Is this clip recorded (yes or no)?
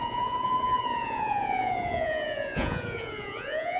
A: no